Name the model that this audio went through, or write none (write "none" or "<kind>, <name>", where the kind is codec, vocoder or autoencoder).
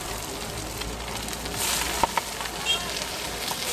none